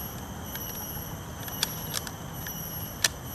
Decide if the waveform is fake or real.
real